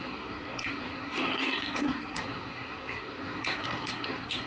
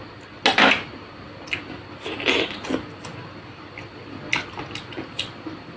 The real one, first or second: second